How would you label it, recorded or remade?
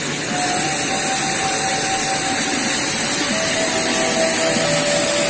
recorded